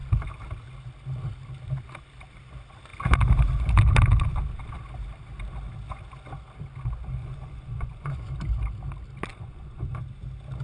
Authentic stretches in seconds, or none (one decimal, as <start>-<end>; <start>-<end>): 0.0-7.2; 8.3-9.3; 10.0-10.6